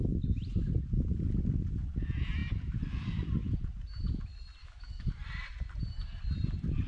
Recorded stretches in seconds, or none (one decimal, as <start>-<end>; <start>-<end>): 0.0-4.6; 5.1-6.9